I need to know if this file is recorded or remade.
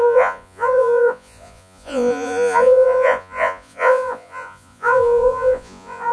remade